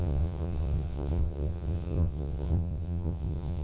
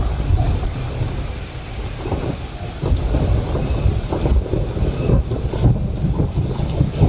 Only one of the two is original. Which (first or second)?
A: second